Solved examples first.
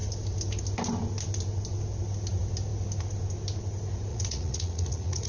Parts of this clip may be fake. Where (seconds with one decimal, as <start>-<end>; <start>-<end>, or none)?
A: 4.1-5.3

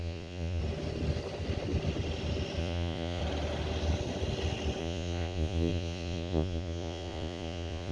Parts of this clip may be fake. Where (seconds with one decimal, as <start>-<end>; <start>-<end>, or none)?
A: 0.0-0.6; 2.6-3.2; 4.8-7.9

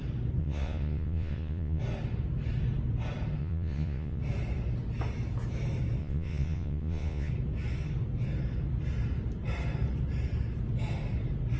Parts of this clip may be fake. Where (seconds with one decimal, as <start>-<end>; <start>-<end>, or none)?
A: 0.4-1.8; 3.4-4.2; 6.0-7.3

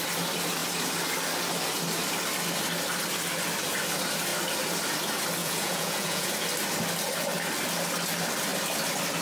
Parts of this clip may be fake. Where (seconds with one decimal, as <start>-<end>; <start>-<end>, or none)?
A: 5.4-6.3

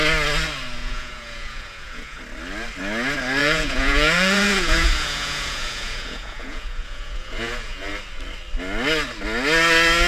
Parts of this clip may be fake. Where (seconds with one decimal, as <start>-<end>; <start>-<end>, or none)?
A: 0.8-2.2; 3.4-7.9